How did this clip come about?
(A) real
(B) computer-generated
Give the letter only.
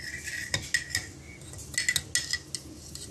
A